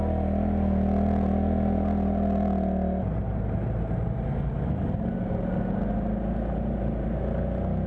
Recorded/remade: recorded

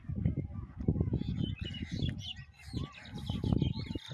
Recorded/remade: recorded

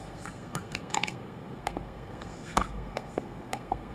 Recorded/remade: remade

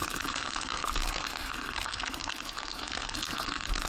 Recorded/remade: remade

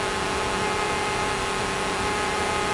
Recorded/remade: recorded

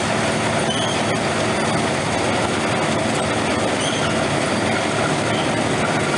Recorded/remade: recorded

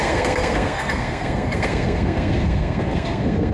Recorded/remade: remade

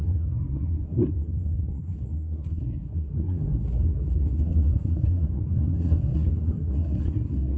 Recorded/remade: remade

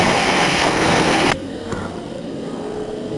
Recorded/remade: remade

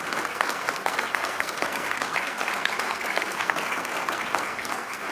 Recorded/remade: remade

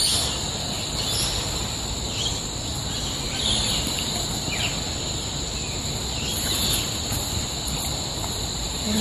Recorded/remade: recorded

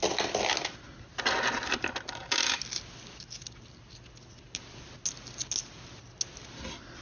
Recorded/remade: recorded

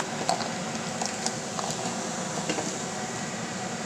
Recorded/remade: recorded